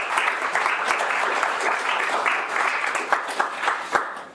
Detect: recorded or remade recorded